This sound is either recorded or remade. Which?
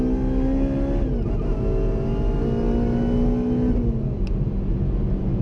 recorded